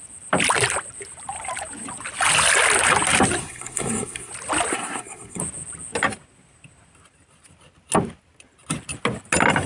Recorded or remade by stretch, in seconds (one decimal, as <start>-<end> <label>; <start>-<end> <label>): 0.0-3.4 recorded; 3.4-4.3 remade; 4.3-4.7 recorded; 4.7-5.4 remade; 5.4-9.7 recorded